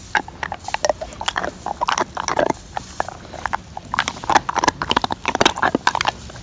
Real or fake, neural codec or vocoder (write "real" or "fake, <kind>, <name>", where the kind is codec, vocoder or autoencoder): real